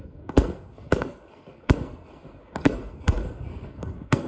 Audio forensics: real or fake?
fake